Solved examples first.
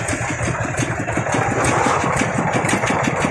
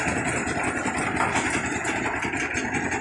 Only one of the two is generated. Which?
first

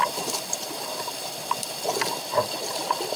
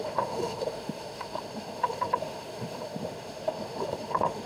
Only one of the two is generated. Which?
second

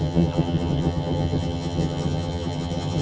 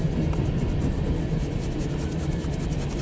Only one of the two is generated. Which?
first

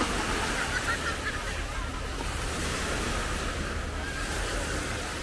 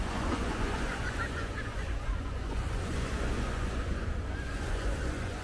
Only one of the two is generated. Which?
second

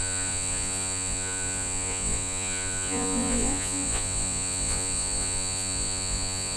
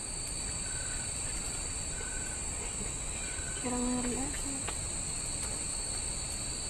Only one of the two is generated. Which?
first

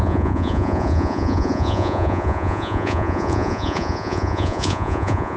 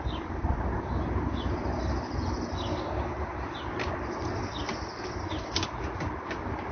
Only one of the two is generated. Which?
first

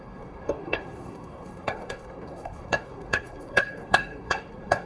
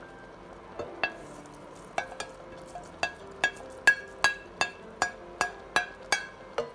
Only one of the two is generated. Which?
first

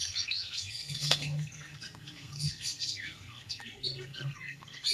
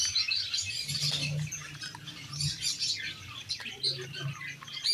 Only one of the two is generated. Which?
first